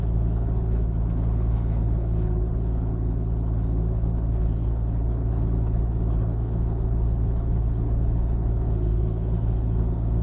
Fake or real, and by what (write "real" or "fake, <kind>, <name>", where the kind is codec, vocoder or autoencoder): fake, codec, HILCodec